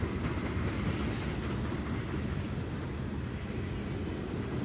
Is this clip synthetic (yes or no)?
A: no